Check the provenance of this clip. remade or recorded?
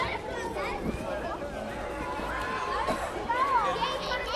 recorded